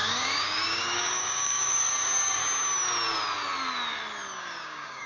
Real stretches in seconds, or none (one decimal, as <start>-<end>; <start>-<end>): 2.4-4.4